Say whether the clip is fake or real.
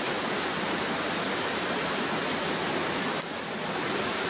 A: real